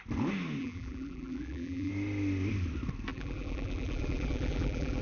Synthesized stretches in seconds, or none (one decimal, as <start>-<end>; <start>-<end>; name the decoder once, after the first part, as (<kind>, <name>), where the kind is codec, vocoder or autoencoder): 0.6-1.9 (vocoder, BigVGAN v2); 3.1-5.0